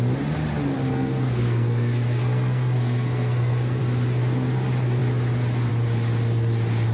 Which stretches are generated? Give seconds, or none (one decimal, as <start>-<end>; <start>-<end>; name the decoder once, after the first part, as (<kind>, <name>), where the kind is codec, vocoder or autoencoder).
0.9-3.8 (codec, SNAC)